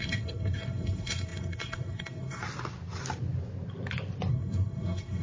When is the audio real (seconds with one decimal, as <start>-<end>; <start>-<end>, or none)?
2.4-4.3